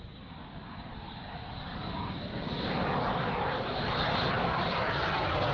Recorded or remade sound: recorded